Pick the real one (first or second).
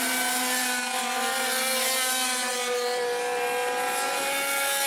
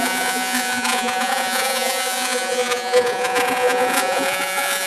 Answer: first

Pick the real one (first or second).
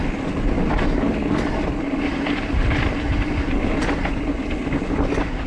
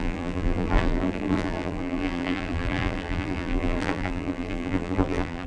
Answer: first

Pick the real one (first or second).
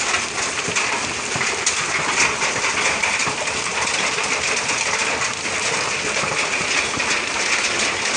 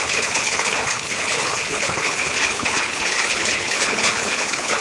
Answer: first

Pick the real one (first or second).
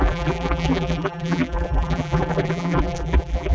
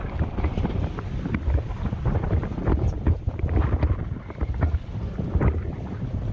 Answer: second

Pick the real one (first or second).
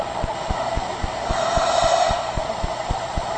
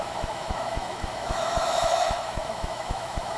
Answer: first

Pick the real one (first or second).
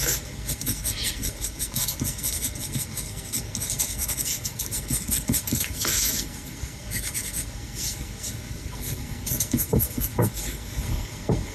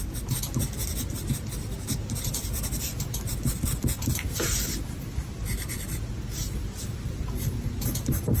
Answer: second